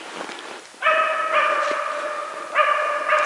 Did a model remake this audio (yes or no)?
no